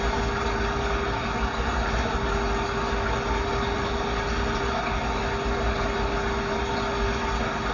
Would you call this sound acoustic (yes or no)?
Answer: yes